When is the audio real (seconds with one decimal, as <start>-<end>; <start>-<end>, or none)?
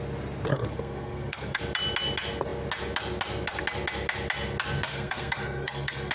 0.0-0.5; 1.6-4.9